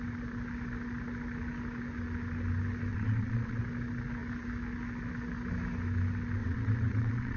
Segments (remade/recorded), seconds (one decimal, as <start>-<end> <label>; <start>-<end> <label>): 0.0-2.9 recorded; 2.9-3.6 remade; 3.6-6.4 recorded; 6.4-7.4 remade